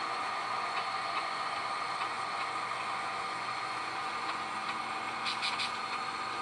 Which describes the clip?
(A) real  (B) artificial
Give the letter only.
B